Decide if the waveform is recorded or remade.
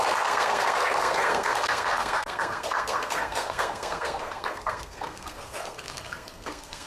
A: remade